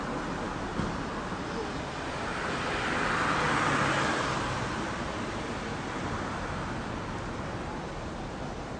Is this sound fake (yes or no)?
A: no